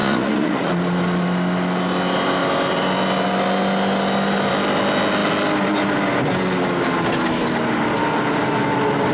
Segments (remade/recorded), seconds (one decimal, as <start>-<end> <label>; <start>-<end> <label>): 0.0-0.7 remade; 0.7-9.1 recorded